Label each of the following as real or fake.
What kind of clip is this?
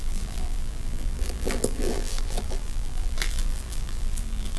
fake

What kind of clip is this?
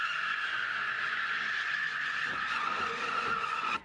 fake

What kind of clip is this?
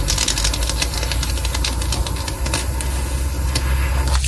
real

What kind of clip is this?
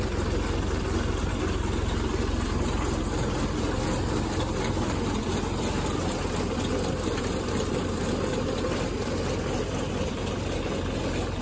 fake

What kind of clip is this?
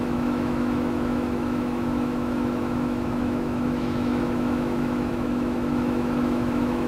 fake